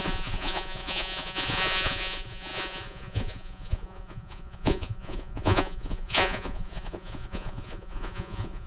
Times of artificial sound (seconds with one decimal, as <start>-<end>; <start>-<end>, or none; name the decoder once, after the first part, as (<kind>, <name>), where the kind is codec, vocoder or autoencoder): 0.0-8.7 (vocoder, Vocos)